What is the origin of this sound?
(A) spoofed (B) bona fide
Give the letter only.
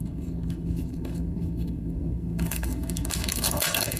A